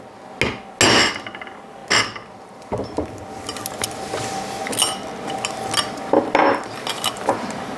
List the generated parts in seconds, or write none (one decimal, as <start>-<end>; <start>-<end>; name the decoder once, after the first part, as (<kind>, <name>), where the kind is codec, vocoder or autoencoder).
none